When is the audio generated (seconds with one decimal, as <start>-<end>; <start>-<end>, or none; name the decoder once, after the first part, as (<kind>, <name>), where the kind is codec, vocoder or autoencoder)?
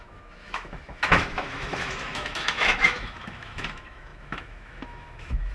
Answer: 0.0-5.5 (autoencoder, DAC-VAE)